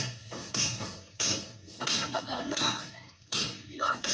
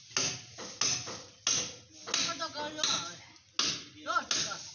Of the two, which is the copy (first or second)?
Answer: first